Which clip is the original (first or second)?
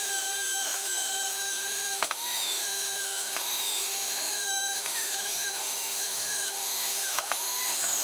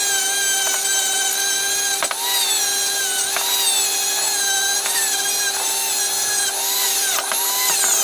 second